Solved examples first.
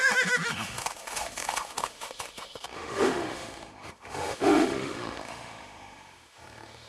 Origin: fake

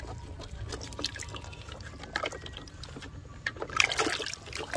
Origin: real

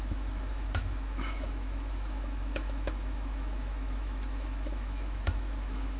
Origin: fake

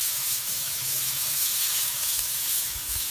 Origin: fake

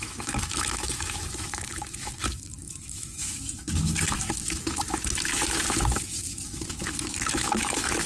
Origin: fake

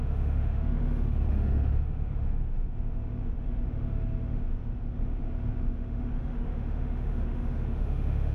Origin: fake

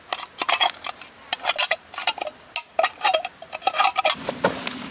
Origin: real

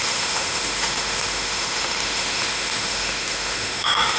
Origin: fake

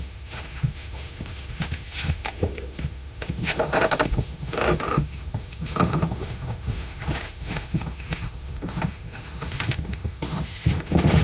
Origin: fake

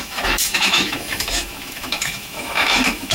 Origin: fake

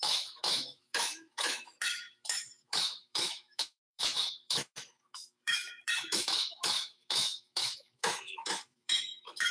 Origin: fake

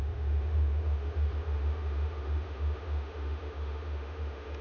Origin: fake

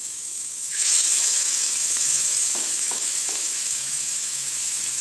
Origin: fake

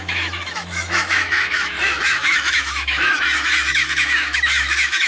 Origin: fake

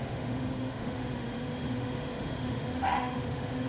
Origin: fake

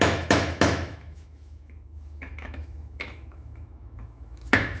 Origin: fake